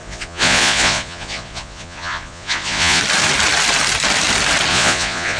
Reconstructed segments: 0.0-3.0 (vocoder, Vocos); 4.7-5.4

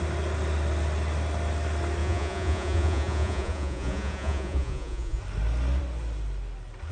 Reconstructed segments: 2.0-5.2 (vocoder, Vocos)

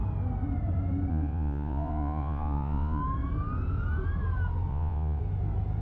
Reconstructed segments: 1.1-3.0 (vocoder, Vocos); 4.7-5.2

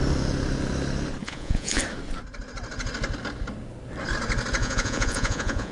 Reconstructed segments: 1.2-1.8 (vocoder, Vocos); 4.6-5.7

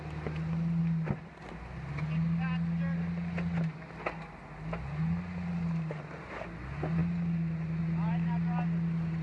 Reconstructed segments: none